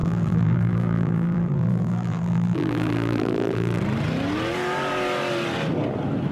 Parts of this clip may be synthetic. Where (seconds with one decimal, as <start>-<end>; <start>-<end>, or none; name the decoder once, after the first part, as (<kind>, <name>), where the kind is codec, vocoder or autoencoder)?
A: 0.0-3.8 (vocoder, BigVGAN v2)